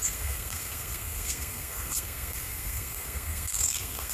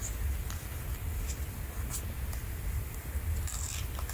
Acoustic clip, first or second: second